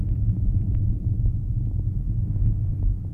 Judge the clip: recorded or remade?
recorded